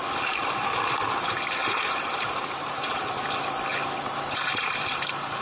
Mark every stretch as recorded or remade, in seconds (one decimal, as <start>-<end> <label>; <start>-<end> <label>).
0.0-1.6 recorded; 1.6-3.3 remade; 3.3-3.7 recorded; 3.7-5.0 remade; 5.0-5.4 recorded